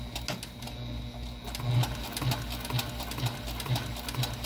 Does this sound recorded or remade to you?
recorded